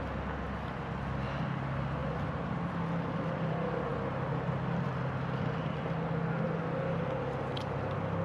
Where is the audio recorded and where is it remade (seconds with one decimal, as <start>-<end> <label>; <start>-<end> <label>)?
0.0-2.0 recorded; 2.0-2.7 remade; 2.7-8.2 recorded